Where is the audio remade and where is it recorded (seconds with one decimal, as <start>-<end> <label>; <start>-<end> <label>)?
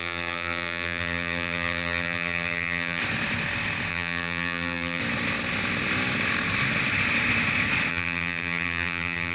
0.0-3.0 remade; 3.0-3.9 recorded; 3.9-5.0 remade; 5.0-7.9 recorded; 7.9-9.3 remade